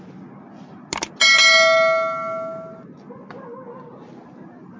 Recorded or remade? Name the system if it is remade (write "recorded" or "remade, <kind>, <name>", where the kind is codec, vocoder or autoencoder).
recorded